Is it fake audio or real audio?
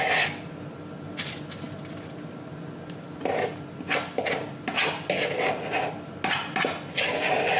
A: real